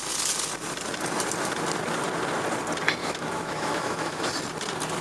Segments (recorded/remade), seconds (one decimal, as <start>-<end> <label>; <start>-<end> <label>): 0.0-3.0 recorded; 3.0-4.3 remade; 4.3-5.0 recorded